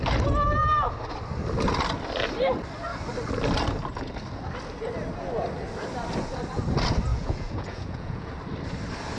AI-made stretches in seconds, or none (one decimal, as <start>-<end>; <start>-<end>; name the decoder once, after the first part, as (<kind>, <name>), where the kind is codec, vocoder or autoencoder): 7.1-8.3 (vocoder, Vocos)